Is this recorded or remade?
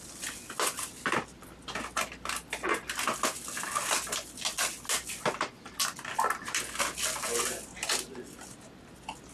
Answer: recorded